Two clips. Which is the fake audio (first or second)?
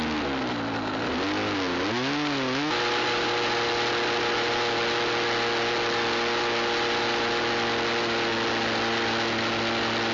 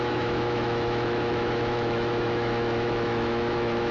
second